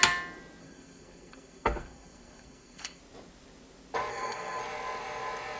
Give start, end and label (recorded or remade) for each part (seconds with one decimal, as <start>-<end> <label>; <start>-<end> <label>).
0.0-0.6 recorded; 0.6-3.0 remade; 3.0-4.1 recorded; 4.1-4.6 remade; 4.6-5.6 recorded